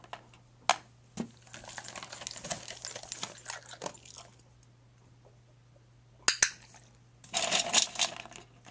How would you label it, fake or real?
real